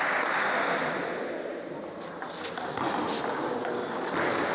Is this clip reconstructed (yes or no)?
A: no